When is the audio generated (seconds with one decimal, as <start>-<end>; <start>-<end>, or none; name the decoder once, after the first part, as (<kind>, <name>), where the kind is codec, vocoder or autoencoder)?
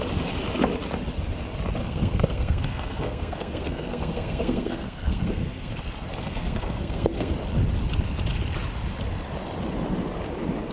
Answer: 1.8-5.7 (codec, SNAC); 6.2-7.3